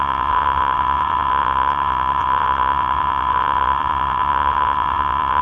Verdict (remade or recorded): remade